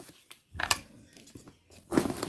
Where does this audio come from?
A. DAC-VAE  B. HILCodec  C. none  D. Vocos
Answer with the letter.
C